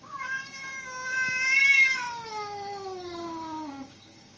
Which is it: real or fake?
fake